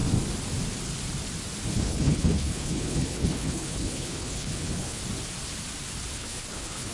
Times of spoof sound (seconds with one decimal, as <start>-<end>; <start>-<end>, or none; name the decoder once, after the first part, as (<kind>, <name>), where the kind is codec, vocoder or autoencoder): 1.7-5.0 (codec, HILCodec); 6.1-6.9